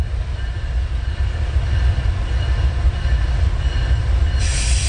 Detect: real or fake real